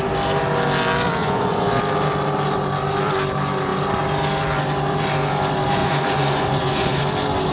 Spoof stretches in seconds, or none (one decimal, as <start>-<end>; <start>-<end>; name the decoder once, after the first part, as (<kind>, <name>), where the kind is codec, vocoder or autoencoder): 1.2-1.8 (vocoder, Vocos); 5.8-7.0